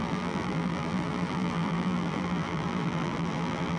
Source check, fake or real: fake